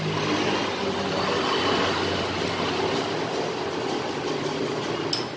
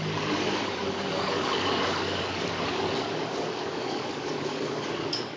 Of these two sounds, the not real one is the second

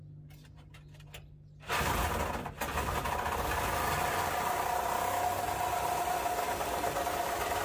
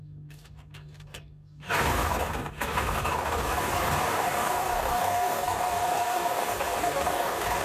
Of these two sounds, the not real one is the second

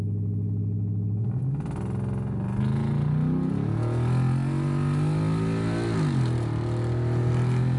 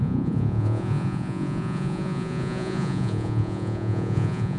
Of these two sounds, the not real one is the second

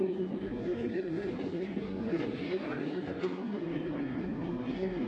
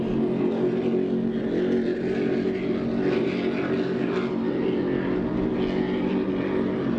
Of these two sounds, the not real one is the first